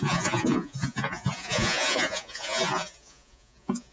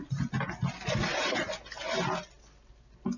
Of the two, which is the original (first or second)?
second